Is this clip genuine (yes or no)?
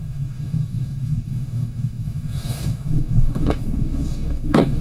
no